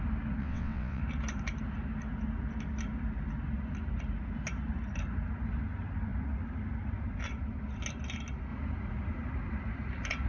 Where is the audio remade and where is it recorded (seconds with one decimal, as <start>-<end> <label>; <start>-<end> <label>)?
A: 0.0-0.4 recorded; 0.4-1.0 remade; 1.0-10.3 recorded